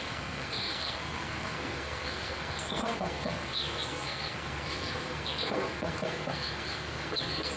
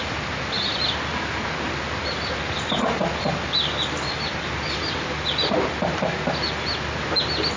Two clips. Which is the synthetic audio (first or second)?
first